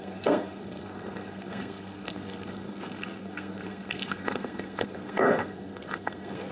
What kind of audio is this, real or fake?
fake